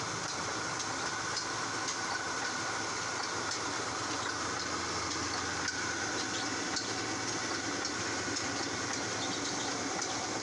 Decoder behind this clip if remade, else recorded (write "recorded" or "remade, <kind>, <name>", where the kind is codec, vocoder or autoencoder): recorded